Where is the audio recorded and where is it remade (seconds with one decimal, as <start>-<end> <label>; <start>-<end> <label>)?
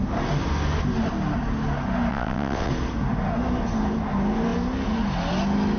0.0-2.1 recorded; 2.1-2.7 remade; 2.7-5.8 recorded